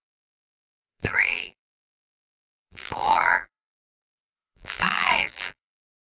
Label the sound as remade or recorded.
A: remade